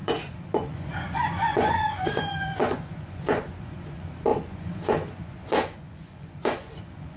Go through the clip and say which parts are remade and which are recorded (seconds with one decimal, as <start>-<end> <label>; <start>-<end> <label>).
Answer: 0.0-7.2 remade